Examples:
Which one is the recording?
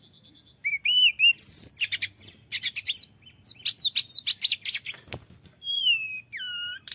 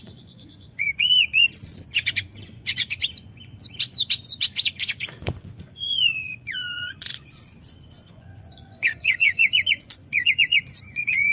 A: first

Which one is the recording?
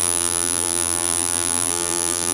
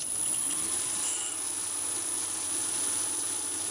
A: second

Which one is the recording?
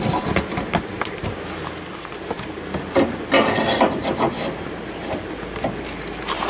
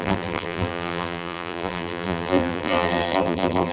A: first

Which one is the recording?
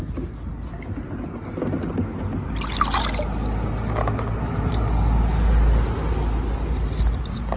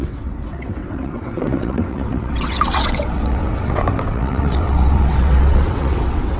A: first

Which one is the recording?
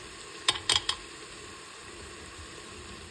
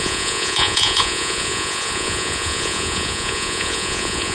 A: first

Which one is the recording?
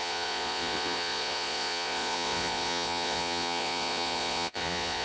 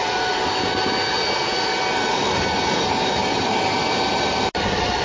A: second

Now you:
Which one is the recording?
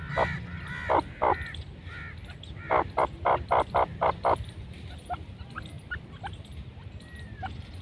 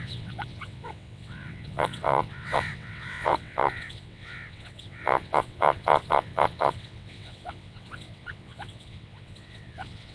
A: first